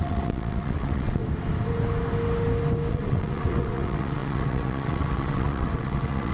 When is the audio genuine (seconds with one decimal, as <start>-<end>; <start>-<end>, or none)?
1.2-2.9